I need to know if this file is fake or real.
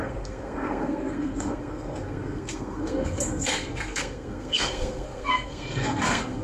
fake